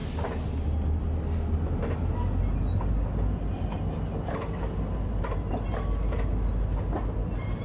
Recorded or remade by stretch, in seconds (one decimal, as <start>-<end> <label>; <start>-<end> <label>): 0.0-7.6 recorded